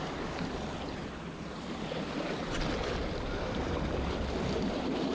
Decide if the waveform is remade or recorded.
recorded